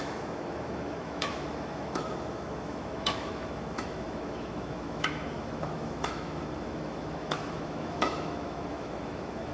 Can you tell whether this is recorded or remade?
remade